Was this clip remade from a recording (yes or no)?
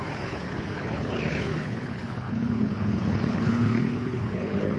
yes